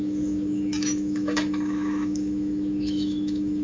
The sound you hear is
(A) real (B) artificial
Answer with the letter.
B